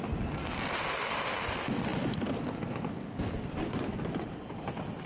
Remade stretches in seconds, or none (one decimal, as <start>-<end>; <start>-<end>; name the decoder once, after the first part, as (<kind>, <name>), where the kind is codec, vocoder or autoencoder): none